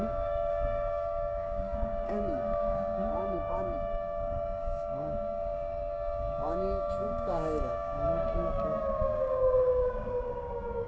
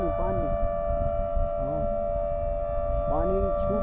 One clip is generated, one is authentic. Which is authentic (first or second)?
second